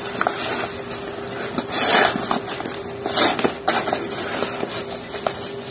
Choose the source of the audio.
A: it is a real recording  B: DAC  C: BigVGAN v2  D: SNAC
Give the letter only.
A